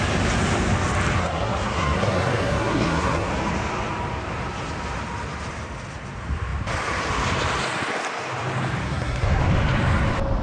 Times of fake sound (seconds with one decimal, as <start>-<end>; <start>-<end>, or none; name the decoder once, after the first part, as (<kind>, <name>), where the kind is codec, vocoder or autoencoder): 1.2-3.3 (codec, SNAC); 8.8-9.4